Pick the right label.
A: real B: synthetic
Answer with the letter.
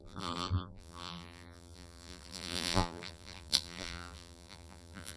B